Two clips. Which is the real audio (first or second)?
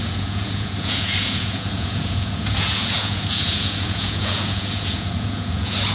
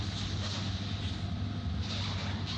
second